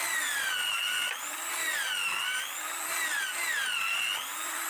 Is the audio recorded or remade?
recorded